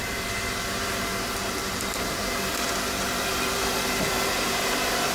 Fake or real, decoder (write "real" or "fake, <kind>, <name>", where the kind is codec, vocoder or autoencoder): fake, vocoder, BigVGAN v2